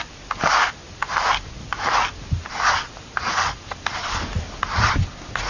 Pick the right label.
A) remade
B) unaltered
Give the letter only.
B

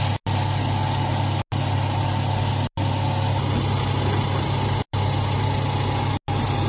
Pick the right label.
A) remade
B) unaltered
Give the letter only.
B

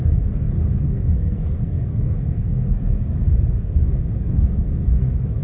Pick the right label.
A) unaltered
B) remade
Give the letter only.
B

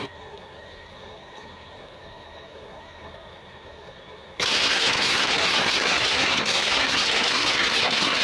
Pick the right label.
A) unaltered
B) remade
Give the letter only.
B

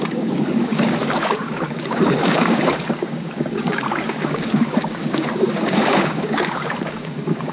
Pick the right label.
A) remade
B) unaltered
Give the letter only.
A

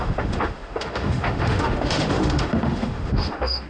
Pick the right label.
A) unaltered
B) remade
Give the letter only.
B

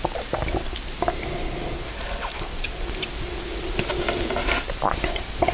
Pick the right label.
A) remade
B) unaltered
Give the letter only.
B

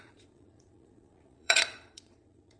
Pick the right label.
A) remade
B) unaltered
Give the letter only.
A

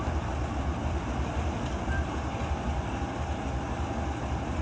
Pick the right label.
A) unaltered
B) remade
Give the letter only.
A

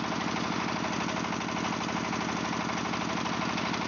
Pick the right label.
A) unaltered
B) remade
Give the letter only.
A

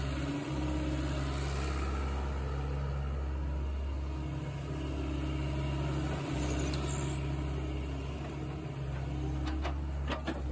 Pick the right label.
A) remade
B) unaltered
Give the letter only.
B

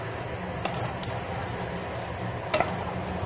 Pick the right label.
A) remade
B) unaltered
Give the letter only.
B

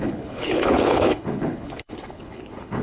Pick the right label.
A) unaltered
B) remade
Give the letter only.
B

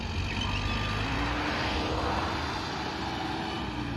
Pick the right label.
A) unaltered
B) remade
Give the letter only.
A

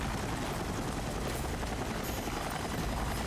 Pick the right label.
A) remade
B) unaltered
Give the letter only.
B